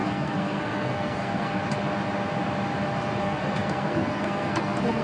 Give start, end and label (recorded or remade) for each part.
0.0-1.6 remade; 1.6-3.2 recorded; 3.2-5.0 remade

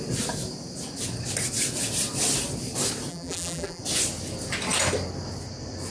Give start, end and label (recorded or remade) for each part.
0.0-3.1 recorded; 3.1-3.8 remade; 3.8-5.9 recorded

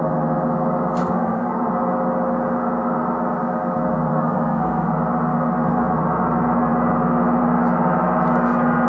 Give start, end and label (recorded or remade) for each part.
0.0-1.0 recorded; 1.0-1.7 remade; 1.7-4.1 recorded; 4.1-4.9 remade; 4.9-8.9 recorded